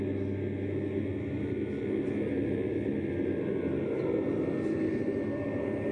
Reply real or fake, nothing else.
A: real